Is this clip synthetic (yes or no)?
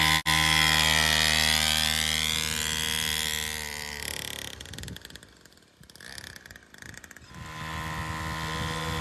no